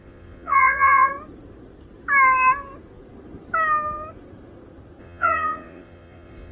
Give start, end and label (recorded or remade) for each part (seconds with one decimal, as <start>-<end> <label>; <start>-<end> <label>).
0.0-1.1 remade; 1.1-5.0 recorded; 5.0-6.5 remade